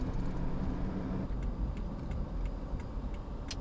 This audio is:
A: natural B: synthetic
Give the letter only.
A